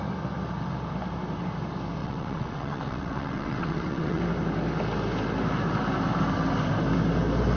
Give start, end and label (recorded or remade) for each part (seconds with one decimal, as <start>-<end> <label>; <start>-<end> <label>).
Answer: 0.0-2.0 recorded; 2.0-4.2 remade; 4.2-7.6 recorded